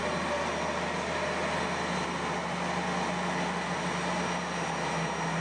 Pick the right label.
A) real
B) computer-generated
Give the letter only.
A